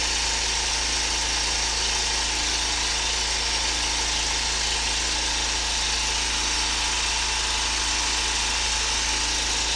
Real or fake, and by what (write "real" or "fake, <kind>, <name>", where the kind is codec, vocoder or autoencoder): real